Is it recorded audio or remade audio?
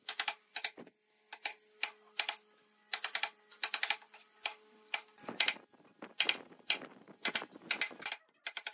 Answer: recorded